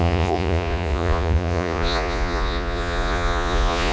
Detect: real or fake fake